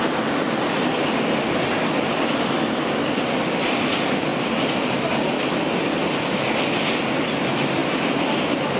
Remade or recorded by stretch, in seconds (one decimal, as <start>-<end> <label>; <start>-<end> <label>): 0.0-8.8 recorded